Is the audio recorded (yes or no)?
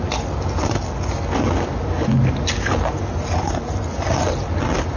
yes